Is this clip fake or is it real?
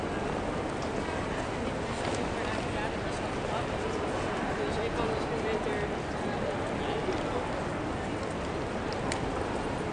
real